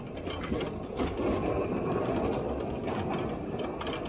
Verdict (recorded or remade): recorded